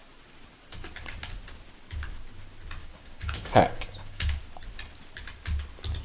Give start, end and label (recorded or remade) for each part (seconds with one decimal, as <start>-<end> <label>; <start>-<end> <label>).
0.0-2.8 recorded; 2.8-4.4 remade; 4.4-6.0 recorded